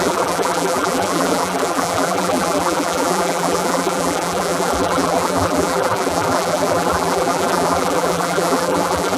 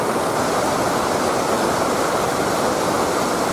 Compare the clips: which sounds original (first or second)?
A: second